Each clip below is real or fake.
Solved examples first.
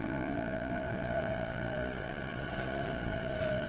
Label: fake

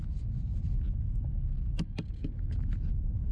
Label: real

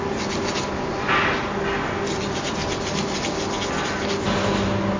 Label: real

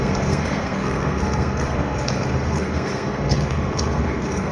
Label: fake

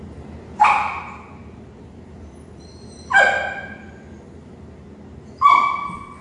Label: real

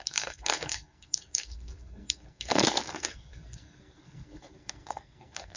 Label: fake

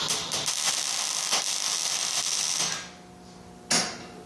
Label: real